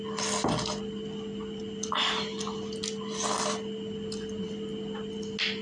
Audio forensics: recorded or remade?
recorded